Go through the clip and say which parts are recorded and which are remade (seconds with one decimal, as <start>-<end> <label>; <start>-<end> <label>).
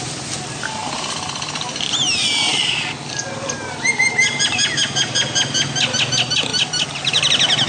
0.0-7.7 recorded